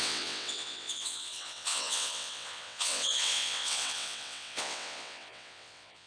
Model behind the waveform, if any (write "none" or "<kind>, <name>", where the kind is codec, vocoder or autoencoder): vocoder, WaveNeXt